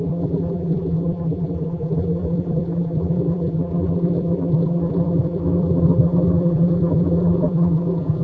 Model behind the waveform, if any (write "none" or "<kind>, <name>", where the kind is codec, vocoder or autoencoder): vocoder, BigVGAN v2